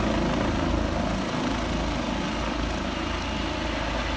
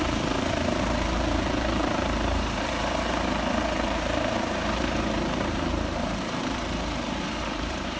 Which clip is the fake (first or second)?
second